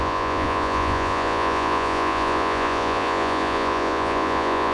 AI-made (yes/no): yes